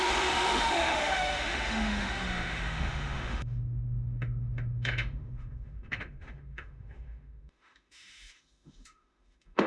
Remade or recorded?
remade